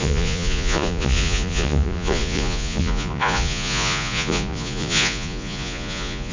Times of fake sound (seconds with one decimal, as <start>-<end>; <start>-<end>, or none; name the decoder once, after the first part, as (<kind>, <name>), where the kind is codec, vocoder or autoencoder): 0.0-6.3 (vocoder, Vocos)